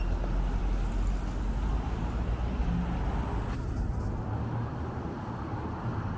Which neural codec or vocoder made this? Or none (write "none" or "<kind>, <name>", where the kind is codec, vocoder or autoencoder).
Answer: none